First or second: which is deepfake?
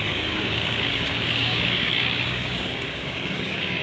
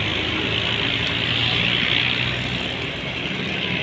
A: first